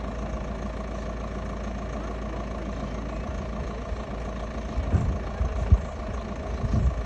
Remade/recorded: recorded